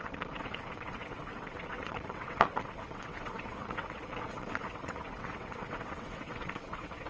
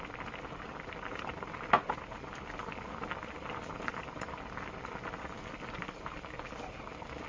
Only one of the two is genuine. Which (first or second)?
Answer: second